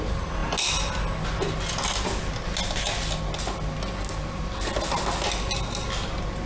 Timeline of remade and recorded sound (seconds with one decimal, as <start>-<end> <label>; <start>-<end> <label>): 0.0-6.5 recorded